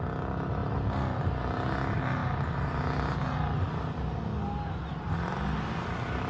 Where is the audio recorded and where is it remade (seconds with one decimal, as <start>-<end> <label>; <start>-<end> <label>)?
0.0-6.3 recorded